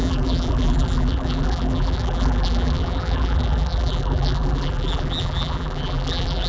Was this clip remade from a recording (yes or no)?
yes